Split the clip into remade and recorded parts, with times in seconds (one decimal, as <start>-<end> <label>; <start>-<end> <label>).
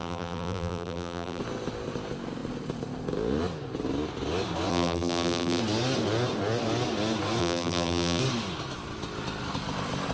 0.0-1.4 remade; 1.4-4.7 recorded; 4.7-5.6 remade; 5.6-7.4 recorded; 7.4-8.2 remade; 8.2-10.1 recorded